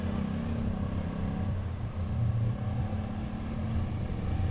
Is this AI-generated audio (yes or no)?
no